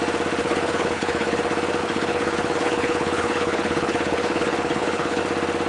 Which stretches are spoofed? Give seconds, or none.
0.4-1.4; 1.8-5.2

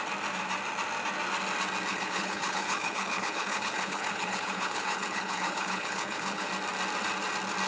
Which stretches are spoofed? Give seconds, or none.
1.9-6.5